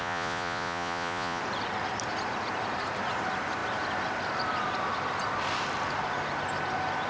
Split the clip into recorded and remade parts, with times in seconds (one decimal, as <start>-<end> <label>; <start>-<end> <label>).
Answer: 0.0-1.4 remade; 1.4-7.1 recorded